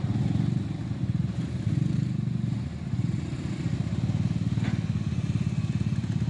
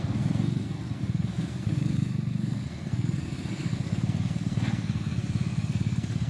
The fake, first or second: second